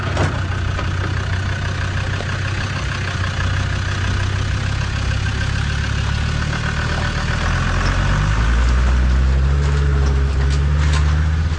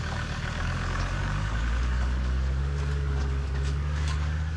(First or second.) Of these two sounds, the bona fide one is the first